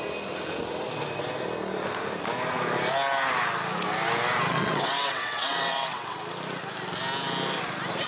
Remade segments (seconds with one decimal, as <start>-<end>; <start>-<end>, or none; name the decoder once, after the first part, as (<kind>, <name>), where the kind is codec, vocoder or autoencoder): 4.5-6.2 (vocoder, WaveNeXt)

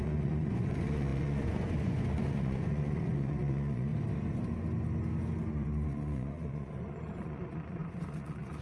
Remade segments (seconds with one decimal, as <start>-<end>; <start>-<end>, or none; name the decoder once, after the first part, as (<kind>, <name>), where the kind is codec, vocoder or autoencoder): 0.0-3.9 (vocoder, Vocos); 5.5-8.6

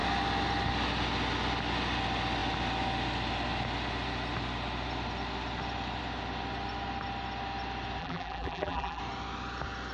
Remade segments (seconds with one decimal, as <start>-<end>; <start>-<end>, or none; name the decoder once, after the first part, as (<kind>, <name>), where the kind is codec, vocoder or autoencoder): 8.0-9.0 (vocoder, BigVGAN v2)

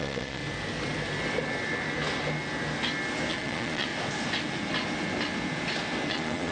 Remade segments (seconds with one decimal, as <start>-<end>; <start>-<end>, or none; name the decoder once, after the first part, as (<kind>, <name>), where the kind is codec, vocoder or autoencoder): 0.0-0.4 (vocoder, Vocos); 3.3-3.9; 6.1-6.5

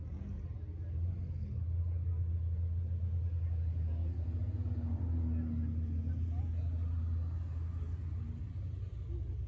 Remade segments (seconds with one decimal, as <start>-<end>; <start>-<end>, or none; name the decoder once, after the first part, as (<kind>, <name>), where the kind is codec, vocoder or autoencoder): none

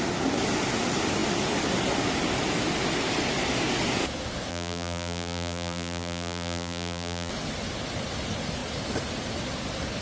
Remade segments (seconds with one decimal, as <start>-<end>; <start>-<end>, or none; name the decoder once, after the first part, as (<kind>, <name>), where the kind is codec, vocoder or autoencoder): 4.5-7.3 (vocoder, BigVGAN v2)